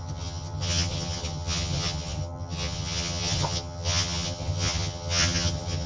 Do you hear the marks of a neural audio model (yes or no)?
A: yes